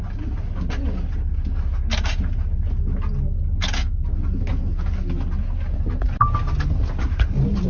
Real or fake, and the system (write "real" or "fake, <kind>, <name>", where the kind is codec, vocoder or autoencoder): real